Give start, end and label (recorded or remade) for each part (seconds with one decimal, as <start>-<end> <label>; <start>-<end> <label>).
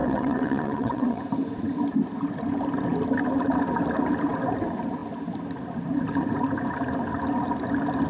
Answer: 0.0-1.2 remade; 1.2-8.1 recorded